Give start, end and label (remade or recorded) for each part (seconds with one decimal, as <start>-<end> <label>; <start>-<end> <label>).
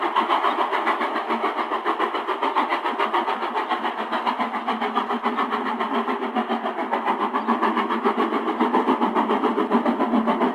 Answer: 0.0-10.5 recorded